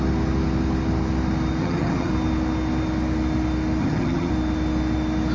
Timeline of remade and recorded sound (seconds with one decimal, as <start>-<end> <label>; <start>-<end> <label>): 0.0-1.6 recorded; 1.6-2.1 remade; 2.1-3.8 recorded; 3.8-4.3 remade; 4.3-5.3 recorded